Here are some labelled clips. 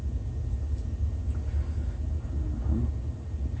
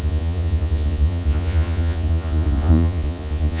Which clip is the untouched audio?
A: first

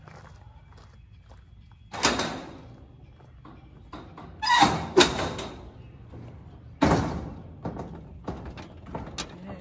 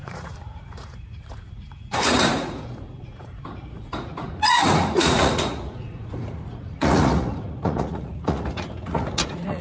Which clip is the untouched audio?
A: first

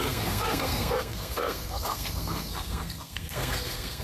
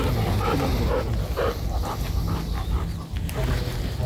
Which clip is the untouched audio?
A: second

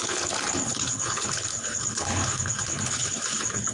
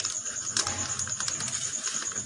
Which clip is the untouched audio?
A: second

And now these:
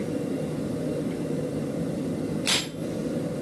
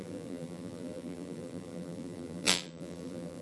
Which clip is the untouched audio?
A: first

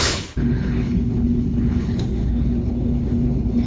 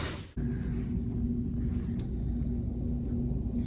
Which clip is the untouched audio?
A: second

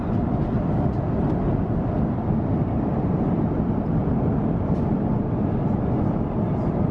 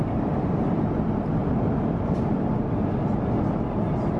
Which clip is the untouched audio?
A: second